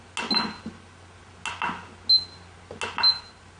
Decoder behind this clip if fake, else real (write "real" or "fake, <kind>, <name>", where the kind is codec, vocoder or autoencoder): real